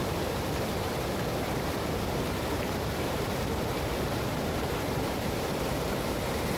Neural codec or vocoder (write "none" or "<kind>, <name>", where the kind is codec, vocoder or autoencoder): vocoder, BigVGAN v2